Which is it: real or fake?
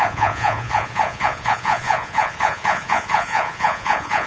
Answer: fake